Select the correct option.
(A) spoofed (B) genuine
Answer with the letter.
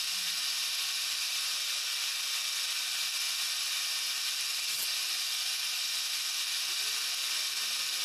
B